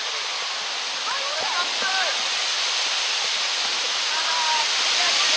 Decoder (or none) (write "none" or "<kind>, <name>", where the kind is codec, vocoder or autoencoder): none